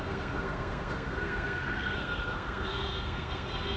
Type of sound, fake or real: fake